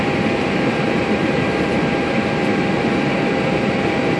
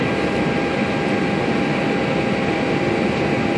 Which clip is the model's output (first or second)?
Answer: first